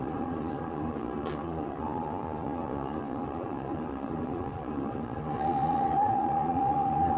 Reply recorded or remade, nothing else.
remade